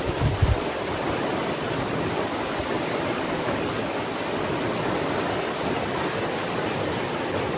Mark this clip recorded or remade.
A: recorded